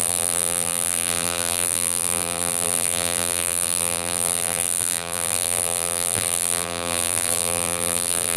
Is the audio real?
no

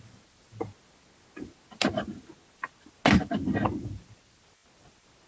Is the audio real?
yes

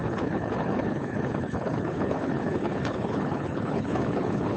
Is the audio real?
no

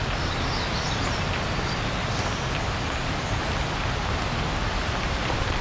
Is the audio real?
yes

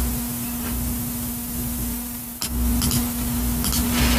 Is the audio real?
yes